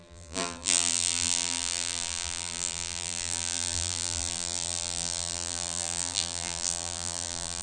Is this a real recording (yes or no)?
no